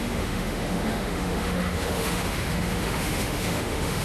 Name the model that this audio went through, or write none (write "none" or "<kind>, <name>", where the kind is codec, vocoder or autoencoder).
autoencoder, DAC-VAE